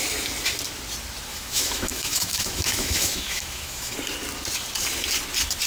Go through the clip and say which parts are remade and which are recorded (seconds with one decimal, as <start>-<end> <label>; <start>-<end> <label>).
0.0-1.3 recorded; 1.3-3.9 remade; 3.9-5.7 recorded